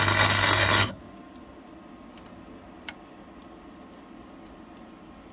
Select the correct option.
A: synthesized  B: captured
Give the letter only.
B